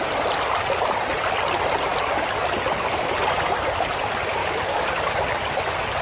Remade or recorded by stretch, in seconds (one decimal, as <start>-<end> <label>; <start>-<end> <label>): 0.0-4.4 recorded; 4.4-5.1 remade; 5.1-6.0 recorded